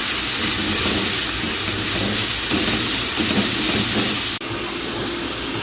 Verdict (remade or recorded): recorded